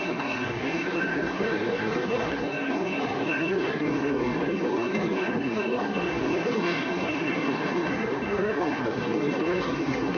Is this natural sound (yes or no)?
no